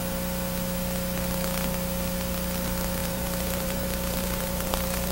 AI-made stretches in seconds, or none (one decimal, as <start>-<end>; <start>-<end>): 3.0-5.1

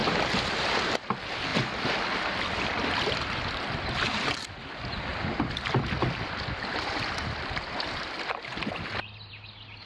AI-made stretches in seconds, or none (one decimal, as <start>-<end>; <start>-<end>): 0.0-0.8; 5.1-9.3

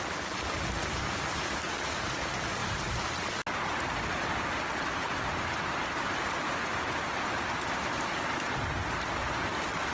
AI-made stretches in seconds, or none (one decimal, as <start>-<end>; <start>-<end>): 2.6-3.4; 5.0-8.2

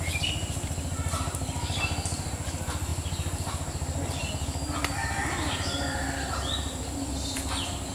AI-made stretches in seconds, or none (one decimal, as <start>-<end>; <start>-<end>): none

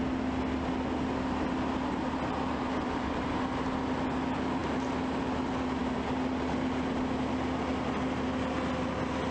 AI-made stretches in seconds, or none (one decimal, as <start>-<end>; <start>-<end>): none

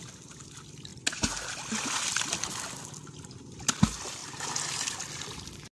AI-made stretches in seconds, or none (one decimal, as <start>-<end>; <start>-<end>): none

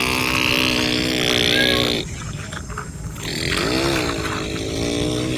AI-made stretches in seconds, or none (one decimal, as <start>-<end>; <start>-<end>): none